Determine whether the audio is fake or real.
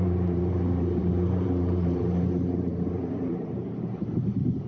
fake